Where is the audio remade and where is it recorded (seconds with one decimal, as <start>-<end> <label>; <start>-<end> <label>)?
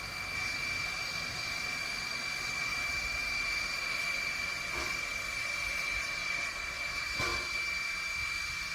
0.0-2.7 recorded; 2.7-4.1 remade; 4.1-8.7 recorded